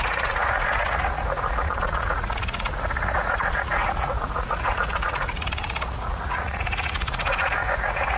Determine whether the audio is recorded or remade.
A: remade